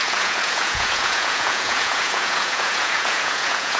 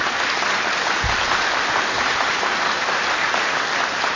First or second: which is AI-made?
first